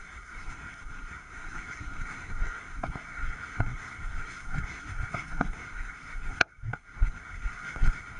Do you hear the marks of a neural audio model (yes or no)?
yes